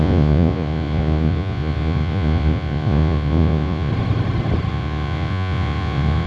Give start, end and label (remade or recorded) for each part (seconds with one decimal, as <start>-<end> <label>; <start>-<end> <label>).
0.0-3.9 remade; 3.9-4.7 recorded; 4.7-6.3 remade